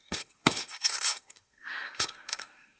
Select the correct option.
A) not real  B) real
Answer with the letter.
A